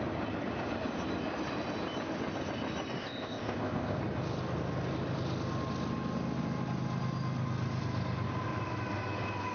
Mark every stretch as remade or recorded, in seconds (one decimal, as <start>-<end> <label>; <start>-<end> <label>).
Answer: 0.0-3.0 recorded; 3.0-4.0 remade; 4.0-9.5 recorded